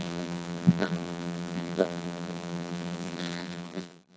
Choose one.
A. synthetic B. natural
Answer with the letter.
A